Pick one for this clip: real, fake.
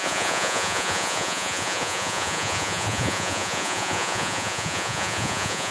fake